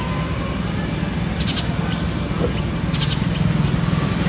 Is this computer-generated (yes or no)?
no